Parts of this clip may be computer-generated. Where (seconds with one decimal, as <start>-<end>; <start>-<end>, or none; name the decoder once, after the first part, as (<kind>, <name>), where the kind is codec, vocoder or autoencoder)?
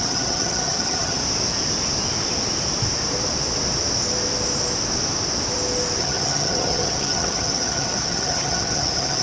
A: 0.0-1.2 (vocoder, HiFi-GAN); 6.0-9.2